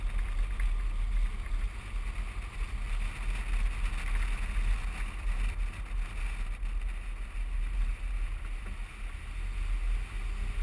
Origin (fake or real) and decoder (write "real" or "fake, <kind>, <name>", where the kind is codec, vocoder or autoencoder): real